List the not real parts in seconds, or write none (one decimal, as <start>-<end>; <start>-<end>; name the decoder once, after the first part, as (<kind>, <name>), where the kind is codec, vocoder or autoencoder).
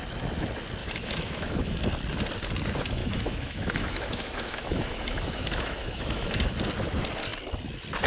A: 0.8-1.8 (autoencoder, DAC-VAE); 3.0-6.5